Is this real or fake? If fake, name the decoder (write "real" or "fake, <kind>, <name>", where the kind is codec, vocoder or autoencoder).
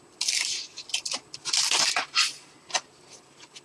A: real